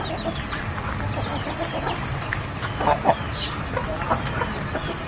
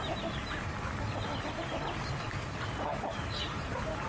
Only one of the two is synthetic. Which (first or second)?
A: second